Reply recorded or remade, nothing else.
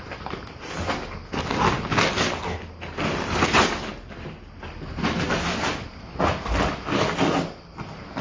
recorded